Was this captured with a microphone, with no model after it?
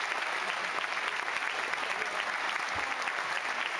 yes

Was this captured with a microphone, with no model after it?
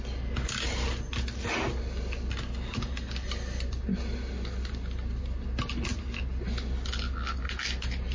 yes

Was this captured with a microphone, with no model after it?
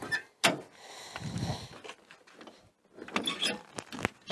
yes